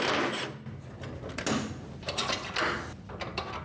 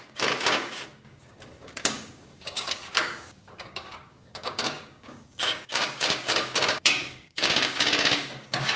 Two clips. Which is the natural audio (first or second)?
first